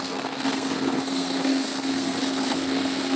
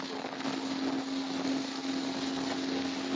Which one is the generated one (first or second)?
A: first